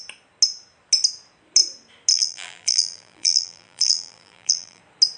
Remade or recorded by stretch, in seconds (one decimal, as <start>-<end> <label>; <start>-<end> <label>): 0.0-2.1 recorded; 2.1-4.8 remade; 4.8-5.2 recorded